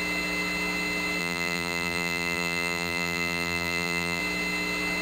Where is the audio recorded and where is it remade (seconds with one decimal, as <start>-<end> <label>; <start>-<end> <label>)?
0.0-1.2 recorded; 1.2-4.2 remade; 4.2-5.0 recorded